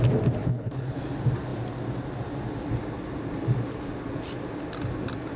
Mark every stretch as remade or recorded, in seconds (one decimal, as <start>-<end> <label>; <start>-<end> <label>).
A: 0.0-0.4 recorded; 0.4-1.0 remade; 1.0-5.4 recorded